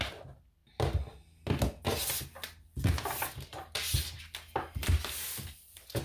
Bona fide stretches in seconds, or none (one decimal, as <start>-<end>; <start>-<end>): 0.0-6.0